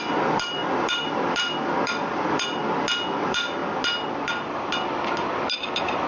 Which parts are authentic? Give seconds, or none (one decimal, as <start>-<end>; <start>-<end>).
2.6-3.2; 3.6-4.1